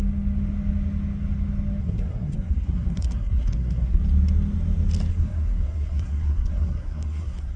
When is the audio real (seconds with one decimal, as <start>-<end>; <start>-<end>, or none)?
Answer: 0.0-1.8; 4.0-5.1